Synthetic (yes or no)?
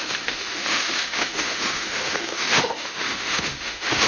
yes